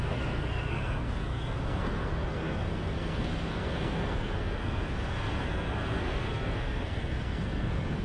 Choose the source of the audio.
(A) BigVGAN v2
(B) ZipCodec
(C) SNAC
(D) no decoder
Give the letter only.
C